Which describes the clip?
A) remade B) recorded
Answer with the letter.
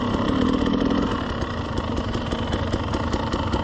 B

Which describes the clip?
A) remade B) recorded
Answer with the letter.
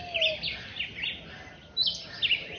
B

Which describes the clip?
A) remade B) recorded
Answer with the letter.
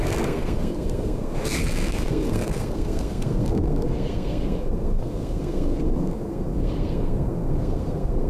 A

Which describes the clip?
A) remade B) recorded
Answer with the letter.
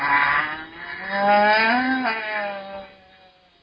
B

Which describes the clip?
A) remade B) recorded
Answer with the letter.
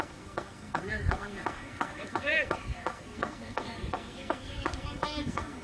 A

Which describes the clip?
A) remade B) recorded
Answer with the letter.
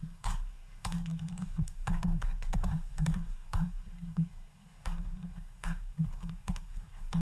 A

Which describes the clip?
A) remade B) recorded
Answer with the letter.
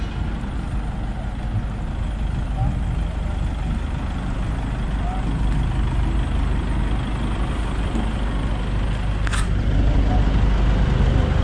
B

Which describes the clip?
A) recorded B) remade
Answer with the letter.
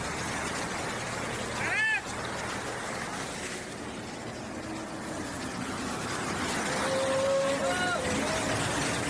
A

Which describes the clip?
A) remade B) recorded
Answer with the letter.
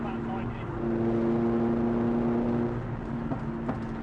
B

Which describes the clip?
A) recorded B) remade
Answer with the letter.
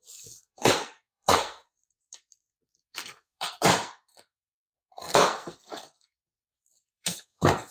B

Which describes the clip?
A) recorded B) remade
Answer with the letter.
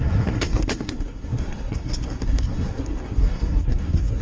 B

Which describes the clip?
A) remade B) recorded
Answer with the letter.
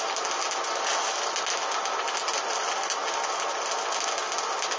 B